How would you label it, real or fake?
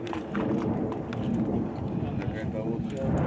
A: real